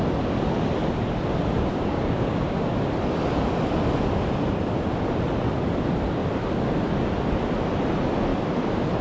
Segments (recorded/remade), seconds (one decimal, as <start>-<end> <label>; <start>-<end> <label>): 0.0-1.7 recorded; 1.7-2.7 remade; 2.7-9.0 recorded